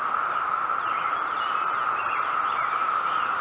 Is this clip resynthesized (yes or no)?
no